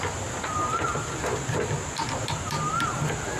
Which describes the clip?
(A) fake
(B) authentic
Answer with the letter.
B